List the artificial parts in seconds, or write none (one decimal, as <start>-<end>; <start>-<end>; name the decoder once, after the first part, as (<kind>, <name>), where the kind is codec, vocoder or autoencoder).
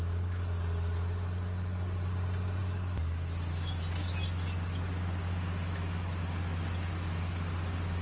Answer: none